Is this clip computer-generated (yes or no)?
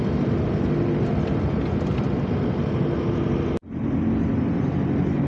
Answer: no